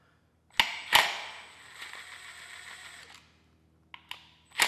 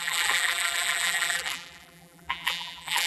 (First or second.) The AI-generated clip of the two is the second